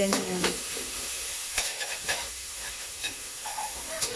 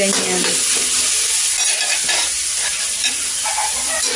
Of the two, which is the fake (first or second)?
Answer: first